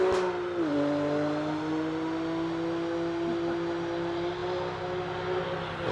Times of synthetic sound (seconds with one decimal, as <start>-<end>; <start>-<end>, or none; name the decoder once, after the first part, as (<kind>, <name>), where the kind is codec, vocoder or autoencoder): none